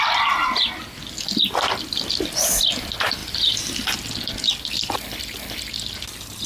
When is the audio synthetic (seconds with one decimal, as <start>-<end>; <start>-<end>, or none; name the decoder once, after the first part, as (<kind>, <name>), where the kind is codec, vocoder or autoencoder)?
none